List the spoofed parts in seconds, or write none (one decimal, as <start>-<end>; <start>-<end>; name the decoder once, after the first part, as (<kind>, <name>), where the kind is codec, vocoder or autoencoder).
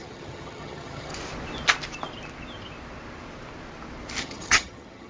0.0-1.1 (vocoder, HiFi-GAN); 4.2-5.1